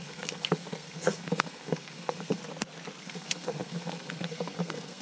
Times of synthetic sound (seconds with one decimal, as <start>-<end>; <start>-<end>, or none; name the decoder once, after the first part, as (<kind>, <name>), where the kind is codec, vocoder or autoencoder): 0.0-2.4 (codec, SNAC); 3.0-5.0